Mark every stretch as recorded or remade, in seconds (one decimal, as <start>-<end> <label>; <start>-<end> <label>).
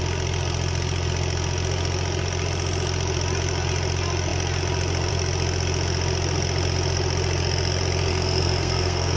0.0-8.1 recorded; 8.1-9.2 remade